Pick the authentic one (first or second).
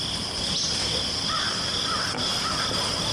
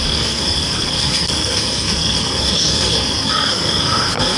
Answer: first